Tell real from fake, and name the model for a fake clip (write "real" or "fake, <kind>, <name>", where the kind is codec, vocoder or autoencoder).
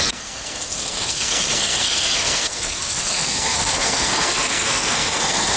fake, codec, SNAC